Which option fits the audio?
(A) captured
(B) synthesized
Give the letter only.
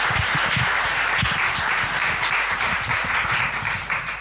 B